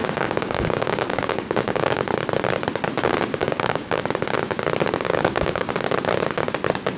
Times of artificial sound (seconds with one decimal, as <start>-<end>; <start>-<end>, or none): 0.0-2.0; 3.4-4.0; 5.1-5.7